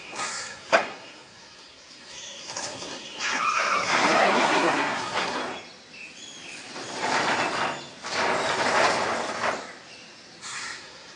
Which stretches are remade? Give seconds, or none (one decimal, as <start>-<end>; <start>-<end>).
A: 0.0-5.4; 10.4-11.2